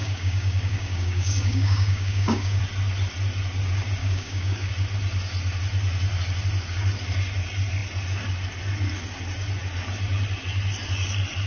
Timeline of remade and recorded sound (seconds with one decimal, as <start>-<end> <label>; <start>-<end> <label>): 0.0-2.6 remade; 2.6-4.0 recorded; 4.0-4.7 remade; 4.7-11.5 recorded